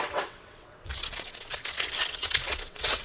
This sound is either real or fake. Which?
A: fake